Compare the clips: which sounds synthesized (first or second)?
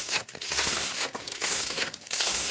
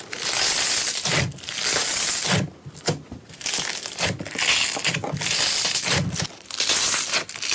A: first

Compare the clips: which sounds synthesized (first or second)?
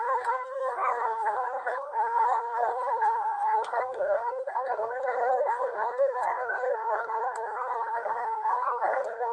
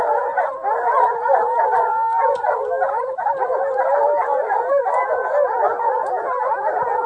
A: first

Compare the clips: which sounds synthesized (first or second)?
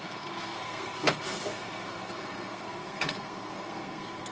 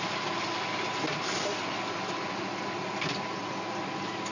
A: first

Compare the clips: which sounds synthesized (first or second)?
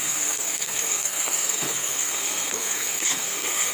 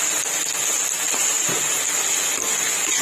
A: first